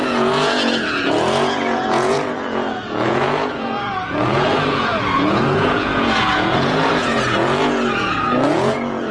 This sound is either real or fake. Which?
fake